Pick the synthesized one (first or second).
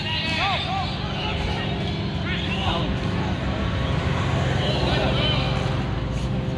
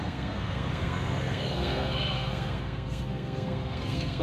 second